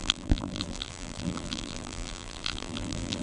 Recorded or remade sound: remade